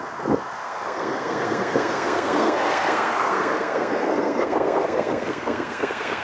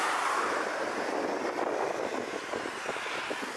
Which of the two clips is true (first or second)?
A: second